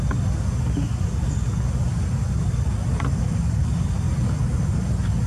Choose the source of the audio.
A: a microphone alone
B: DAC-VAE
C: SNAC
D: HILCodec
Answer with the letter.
A